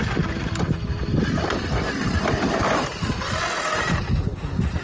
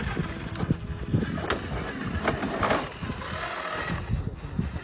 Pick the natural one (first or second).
second